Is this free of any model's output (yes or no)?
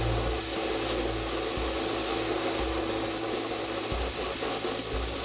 yes